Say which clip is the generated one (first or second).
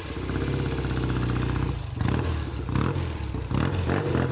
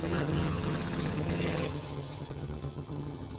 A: second